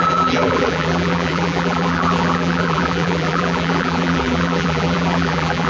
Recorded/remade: remade